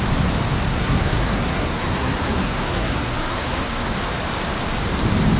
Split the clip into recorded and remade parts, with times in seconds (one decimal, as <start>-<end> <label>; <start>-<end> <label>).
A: 0.0-0.7 recorded; 0.7-3.9 remade; 3.9-5.4 recorded